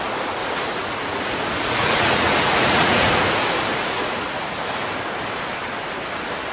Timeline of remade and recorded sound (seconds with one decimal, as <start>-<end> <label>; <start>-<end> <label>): 0.0-0.4 recorded; 0.4-3.2 remade; 3.2-3.7 recorded; 3.7-4.6 remade; 4.6-6.5 recorded